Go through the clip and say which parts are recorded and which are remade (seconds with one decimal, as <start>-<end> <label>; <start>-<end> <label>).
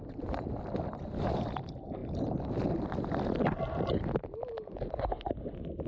0.0-5.9 recorded